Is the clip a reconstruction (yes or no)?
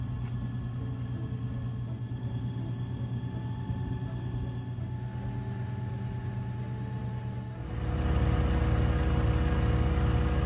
no